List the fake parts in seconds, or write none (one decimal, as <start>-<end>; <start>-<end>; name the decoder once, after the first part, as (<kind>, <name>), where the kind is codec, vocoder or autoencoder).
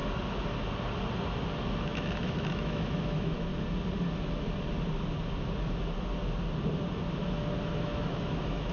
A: 1.8-3.5 (autoencoder, DAC-VAE); 7.7-8.7